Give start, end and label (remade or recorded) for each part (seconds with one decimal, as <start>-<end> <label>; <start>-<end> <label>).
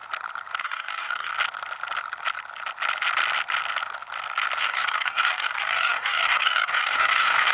0.0-0.6 recorded; 0.6-1.3 remade; 1.3-4.6 recorded; 4.6-7.5 remade